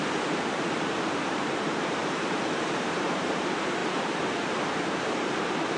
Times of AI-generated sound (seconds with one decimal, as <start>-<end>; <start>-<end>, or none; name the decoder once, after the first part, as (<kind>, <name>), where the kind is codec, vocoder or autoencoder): 0.0-5.8 (vocoder, BigVGAN v2)